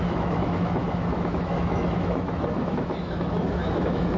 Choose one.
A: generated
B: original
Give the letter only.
A